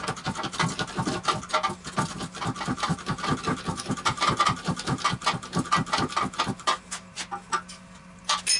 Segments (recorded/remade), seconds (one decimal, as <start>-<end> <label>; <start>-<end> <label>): 0.0-8.6 recorded